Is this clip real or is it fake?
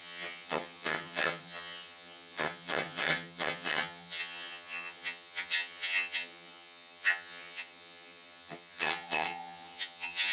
fake